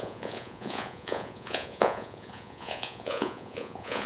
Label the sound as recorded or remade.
remade